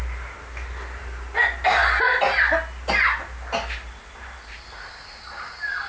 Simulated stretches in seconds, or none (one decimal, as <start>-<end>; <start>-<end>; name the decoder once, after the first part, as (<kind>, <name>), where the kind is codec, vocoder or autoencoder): none